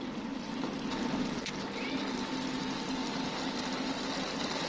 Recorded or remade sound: recorded